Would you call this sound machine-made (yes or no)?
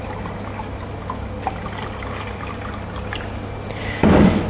no